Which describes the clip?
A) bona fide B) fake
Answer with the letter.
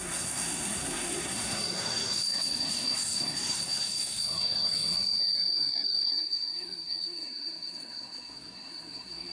B